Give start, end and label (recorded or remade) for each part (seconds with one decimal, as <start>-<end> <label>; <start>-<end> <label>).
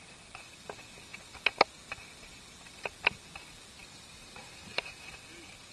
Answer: 0.0-3.8 recorded; 3.8-5.1 remade; 5.1-5.7 recorded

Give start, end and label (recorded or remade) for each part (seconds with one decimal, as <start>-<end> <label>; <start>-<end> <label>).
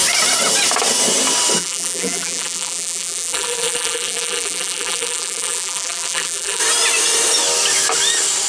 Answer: 0.0-1.6 recorded; 1.6-6.6 remade; 6.6-8.5 recorded